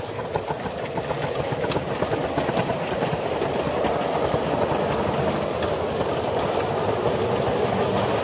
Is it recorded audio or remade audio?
recorded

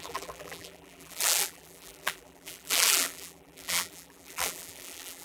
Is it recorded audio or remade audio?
remade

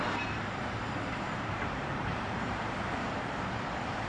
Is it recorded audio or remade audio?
remade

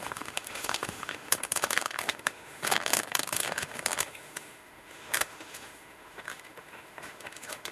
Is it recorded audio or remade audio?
remade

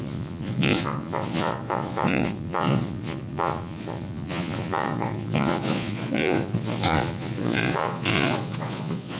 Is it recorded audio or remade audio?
remade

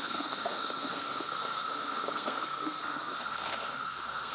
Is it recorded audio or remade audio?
remade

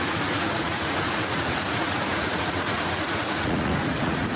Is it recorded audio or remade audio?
remade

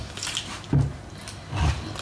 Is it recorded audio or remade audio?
recorded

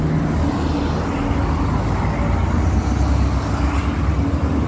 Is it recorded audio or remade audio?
recorded